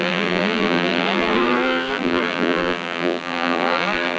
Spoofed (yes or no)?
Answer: yes